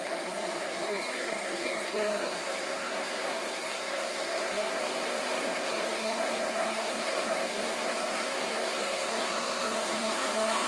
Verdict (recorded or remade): remade